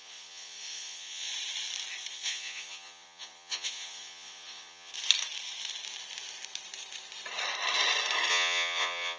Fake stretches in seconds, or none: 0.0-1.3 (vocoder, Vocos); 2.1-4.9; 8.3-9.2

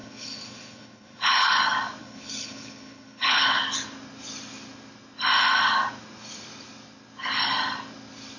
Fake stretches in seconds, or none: 0.0-1.5 (codec, HILCodec); 2.0-3.6